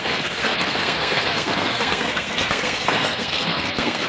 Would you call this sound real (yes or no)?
no